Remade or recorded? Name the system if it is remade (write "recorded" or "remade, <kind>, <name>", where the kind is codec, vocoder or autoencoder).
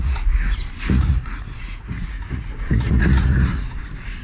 remade, vocoder, Vocos